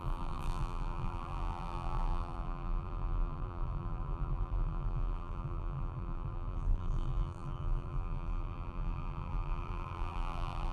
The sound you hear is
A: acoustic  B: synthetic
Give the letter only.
B